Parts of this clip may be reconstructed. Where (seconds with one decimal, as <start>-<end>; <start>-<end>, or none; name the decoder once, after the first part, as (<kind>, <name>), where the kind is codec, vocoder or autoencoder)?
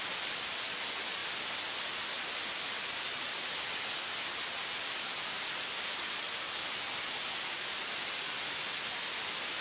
none